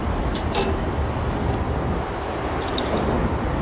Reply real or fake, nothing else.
real